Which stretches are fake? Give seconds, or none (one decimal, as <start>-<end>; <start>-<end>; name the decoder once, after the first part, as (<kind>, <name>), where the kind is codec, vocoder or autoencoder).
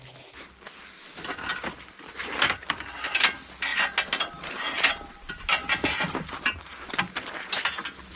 none